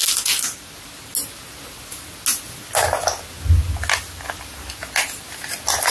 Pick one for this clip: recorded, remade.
recorded